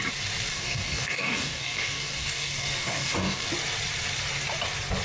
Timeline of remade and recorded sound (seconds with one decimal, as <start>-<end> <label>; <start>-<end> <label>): 0.0-0.5 recorded; 0.5-3.5 remade; 3.5-5.0 recorded